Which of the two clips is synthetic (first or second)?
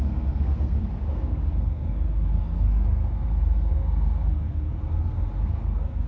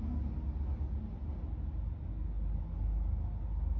first